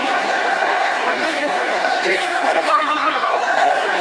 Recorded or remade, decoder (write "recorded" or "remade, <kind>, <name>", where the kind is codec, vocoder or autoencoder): remade, codec, SNAC